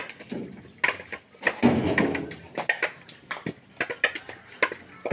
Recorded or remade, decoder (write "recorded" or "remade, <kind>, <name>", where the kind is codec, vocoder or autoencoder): recorded